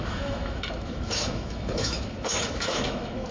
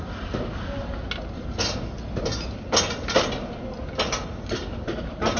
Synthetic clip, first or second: first